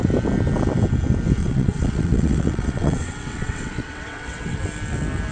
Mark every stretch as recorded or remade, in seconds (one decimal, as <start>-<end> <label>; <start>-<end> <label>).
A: 0.0-1.4 recorded; 1.4-4.6 remade; 4.6-5.3 recorded

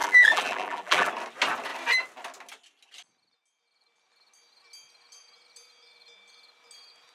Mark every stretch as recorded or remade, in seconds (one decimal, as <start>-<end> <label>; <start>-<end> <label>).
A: 0.0-1.1 remade; 1.1-7.1 recorded

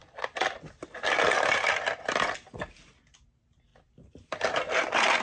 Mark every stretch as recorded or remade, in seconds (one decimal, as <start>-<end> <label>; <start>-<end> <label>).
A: 0.0-5.2 recorded

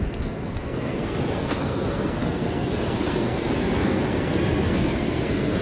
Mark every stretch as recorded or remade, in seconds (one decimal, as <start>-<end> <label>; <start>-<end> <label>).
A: 0.0-5.6 remade

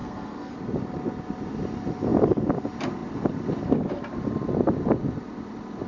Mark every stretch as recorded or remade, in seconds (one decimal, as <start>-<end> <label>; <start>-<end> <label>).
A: 0.0-0.5 remade; 0.5-5.9 recorded